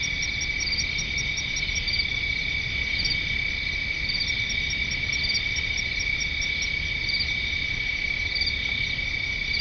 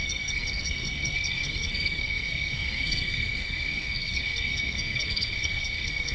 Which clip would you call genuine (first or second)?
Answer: first